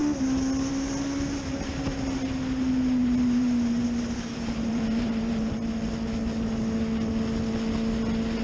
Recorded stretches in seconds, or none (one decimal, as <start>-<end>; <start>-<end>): 0.0-3.0; 5.6-8.4